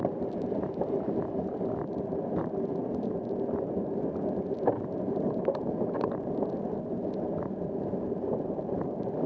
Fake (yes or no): no